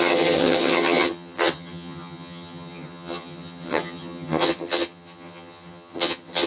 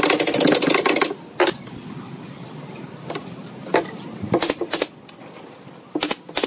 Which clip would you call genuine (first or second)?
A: second